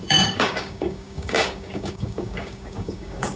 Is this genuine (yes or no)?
no